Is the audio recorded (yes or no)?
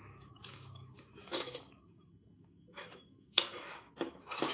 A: no